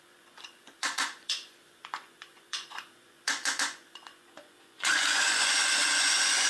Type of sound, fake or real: fake